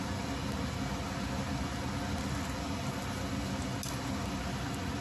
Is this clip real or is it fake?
real